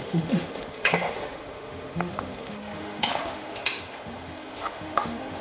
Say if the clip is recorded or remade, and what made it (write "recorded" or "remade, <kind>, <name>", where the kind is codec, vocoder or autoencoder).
remade, autoencoder, DAC-VAE